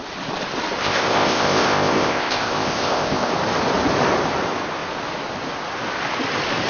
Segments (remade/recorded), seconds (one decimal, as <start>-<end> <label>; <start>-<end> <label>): 0.0-0.8 recorded; 0.8-3.3 remade; 3.3-6.7 recorded